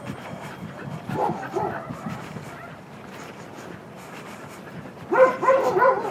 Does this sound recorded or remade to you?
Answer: remade